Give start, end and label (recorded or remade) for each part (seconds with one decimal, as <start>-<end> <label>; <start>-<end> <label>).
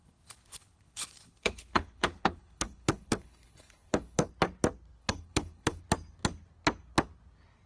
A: 0.0-4.3 remade; 4.3-5.0 recorded; 5.0-5.8 remade; 5.8-7.7 recorded